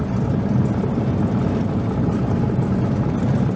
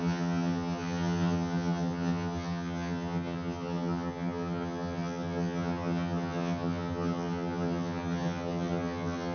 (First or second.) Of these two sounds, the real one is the first